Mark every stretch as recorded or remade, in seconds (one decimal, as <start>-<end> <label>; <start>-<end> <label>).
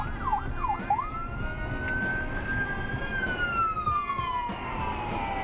0.0-2.1 recorded; 2.1-2.6 remade; 2.6-5.4 recorded